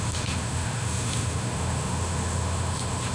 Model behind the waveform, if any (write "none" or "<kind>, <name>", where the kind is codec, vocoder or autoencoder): autoencoder, DAC-VAE